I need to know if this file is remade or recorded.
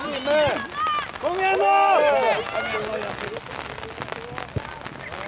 recorded